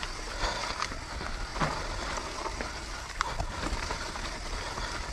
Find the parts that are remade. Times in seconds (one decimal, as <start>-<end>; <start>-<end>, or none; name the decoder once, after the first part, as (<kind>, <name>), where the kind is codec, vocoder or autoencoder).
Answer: 1.5-3.9 (vocoder, BigVGAN v2)